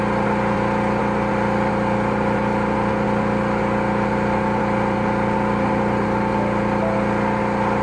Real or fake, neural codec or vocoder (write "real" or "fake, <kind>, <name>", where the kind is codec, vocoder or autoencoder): real